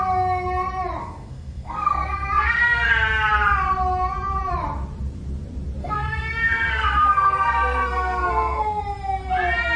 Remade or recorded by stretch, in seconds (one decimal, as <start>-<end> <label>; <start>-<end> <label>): 0.0-1.0 recorded; 1.0-2.9 remade; 2.9-5.8 recorded; 5.8-8.8 remade; 8.8-9.8 recorded

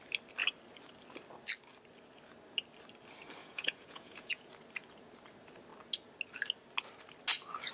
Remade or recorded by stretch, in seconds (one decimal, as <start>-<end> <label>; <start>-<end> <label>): 0.0-3.4 recorded; 3.4-4.5 remade; 4.5-7.7 recorded

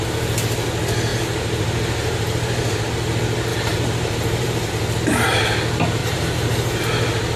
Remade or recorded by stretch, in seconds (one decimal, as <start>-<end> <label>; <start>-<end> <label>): 0.0-1.1 recorded; 1.1-2.9 remade; 2.9-3.5 recorded; 3.5-4.7 remade; 4.7-6.0 recorded; 6.0-6.8 remade; 6.8-7.4 recorded

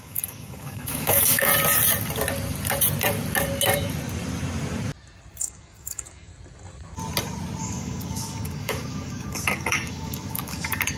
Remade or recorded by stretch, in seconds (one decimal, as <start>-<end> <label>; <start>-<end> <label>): 0.0-1.5 remade; 1.5-5.4 recorded; 5.4-6.3 remade; 6.3-7.6 recorded; 7.6-11.0 remade

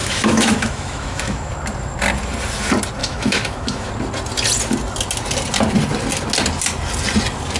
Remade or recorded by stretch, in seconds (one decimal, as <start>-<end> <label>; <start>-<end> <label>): 0.0-1.5 remade; 1.5-3.0 recorded; 3.0-3.9 remade; 3.9-7.6 recorded

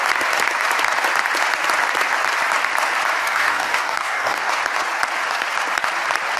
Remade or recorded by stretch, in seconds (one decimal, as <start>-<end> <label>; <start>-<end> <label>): 0.0-3.2 recorded; 3.2-4.5 remade; 4.5-6.4 recorded

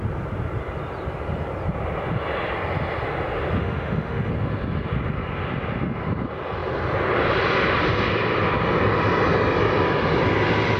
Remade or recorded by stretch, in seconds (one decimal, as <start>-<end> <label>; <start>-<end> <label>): 0.0-3.6 recorded; 3.6-4.3 remade; 4.3-10.8 recorded